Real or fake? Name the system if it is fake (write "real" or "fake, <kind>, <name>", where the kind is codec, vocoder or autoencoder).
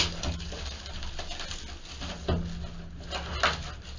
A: real